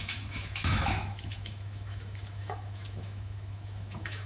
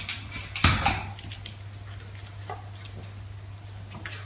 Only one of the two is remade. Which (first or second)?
first